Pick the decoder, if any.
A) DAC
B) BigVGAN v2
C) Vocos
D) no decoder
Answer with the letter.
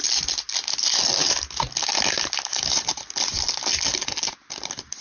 D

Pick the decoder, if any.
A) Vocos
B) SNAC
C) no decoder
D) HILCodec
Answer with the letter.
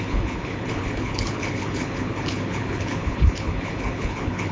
D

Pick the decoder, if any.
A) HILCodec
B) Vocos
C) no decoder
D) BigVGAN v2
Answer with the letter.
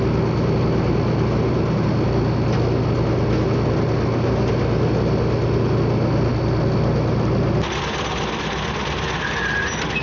C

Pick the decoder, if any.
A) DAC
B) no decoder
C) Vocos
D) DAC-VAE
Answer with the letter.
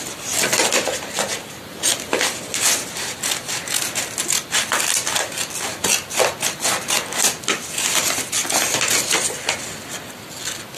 B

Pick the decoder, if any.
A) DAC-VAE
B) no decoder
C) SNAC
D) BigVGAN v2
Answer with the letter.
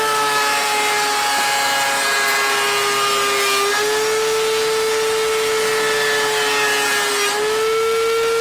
B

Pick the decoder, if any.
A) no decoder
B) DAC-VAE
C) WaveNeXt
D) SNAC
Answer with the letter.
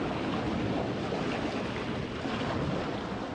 A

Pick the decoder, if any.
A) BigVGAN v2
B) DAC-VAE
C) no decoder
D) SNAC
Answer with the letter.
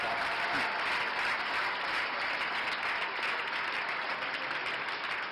C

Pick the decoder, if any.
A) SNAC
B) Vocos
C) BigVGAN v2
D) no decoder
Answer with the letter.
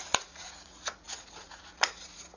B